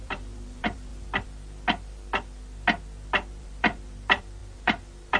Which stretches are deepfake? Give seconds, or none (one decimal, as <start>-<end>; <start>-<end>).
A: 0.0-0.9; 3.3-5.2